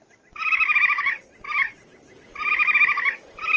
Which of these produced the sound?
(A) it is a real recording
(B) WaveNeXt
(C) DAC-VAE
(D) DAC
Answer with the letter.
A